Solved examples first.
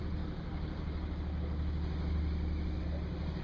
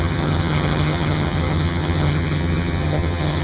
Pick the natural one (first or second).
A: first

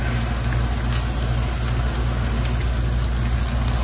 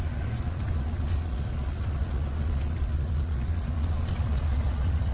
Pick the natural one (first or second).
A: first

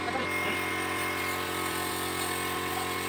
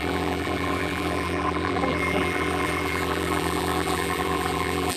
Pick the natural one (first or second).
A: first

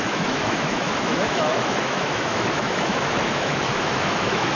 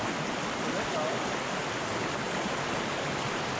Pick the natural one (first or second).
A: second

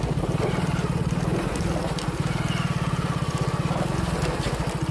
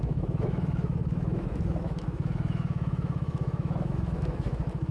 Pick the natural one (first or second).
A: first